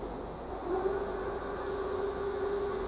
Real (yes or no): no